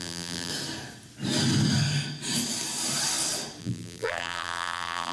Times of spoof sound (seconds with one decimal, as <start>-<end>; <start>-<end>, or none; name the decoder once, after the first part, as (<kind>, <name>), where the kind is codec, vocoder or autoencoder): 0.0-0.5 (vocoder, BigVGAN v2); 3.6-5.1